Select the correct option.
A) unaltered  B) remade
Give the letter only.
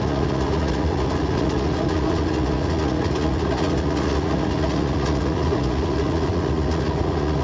B